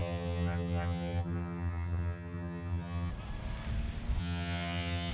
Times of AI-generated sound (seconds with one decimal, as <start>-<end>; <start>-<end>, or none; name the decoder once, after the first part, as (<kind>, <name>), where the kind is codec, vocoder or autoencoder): 0.0-3.1 (vocoder, HiFi-GAN); 4.2-5.1